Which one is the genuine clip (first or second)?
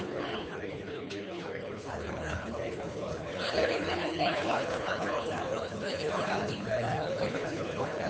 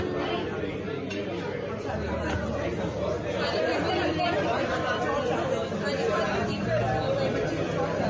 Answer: second